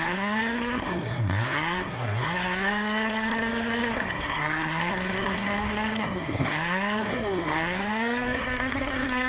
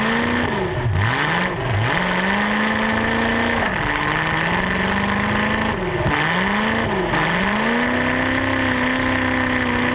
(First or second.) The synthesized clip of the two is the first